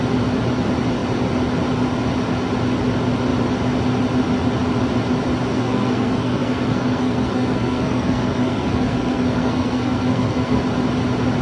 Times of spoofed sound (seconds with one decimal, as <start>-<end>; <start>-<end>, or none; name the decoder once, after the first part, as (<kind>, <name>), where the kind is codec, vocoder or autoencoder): 5.5-10.6 (codec, SNAC)